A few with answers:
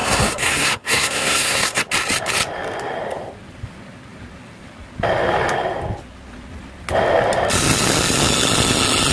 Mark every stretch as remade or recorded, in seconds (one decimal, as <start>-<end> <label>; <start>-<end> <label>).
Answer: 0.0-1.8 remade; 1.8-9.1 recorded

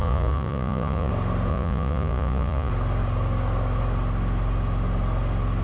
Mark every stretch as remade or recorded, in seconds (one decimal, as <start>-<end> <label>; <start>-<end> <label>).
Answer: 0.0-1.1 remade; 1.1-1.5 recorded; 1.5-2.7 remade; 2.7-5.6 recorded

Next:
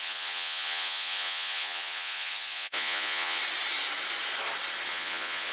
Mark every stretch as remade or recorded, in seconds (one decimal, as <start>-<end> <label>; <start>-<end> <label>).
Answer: 0.0-3.4 remade; 3.4-4.9 recorded; 4.9-5.5 remade